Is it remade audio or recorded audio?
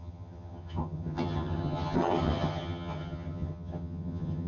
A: remade